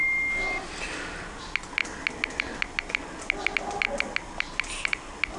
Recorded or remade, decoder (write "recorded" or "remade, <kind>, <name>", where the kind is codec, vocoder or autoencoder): recorded